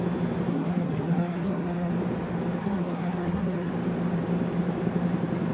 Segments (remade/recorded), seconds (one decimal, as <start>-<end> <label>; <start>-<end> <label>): 0.0-0.5 recorded; 0.5-1.9 remade; 1.9-2.6 recorded; 2.6-3.7 remade; 3.7-5.5 recorded